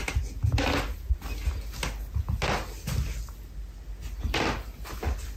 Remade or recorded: recorded